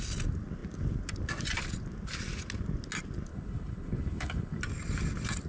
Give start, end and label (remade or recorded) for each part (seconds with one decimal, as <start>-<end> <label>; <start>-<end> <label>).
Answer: 0.0-3.3 recorded; 3.3-4.6 remade; 4.6-5.5 recorded